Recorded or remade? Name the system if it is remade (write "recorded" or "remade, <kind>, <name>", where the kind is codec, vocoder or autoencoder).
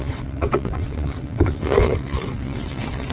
remade, vocoder, WaveNeXt